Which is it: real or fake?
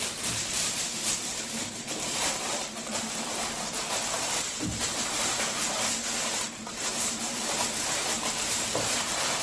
fake